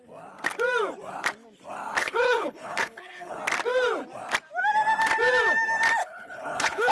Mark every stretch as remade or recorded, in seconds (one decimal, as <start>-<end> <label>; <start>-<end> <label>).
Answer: 0.0-2.0 recorded; 2.0-3.4 remade; 3.4-6.0 recorded; 6.0-6.9 remade